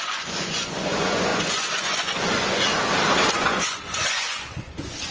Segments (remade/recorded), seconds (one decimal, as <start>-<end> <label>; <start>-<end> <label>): 0.0-2.7 remade; 2.7-3.3 recorded; 3.3-5.1 remade